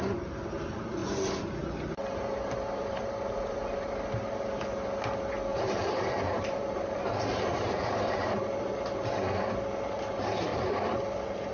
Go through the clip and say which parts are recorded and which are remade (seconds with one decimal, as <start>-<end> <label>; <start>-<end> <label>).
0.0-2.0 recorded; 2.0-3.9 remade; 3.9-5.5 recorded; 5.5-8.9 remade; 8.9-10.5 recorded; 10.5-11.5 remade